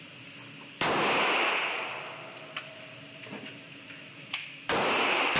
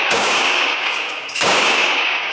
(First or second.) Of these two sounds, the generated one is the second